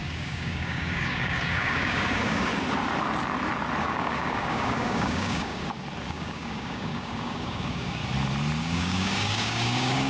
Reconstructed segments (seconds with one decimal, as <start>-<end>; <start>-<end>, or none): 0.0-2.5; 3.8-5.6; 6.1-8.0; 8.6-10.1